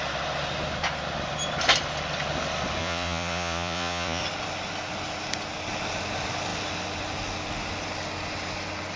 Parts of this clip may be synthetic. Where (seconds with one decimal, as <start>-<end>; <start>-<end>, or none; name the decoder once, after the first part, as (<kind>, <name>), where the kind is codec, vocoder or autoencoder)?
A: 2.8-4.2 (vocoder, Vocos)